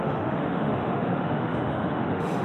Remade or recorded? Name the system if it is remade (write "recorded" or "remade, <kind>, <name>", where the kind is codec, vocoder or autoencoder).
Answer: remade, autoencoder, DAC-VAE